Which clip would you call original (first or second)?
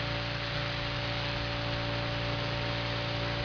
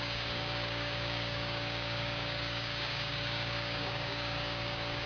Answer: first